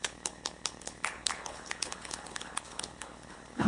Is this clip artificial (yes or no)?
yes